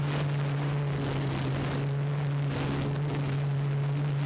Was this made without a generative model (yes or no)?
yes